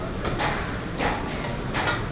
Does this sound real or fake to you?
fake